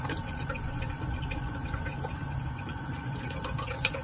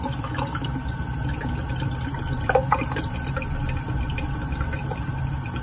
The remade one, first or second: first